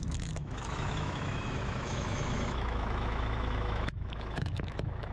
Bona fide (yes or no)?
no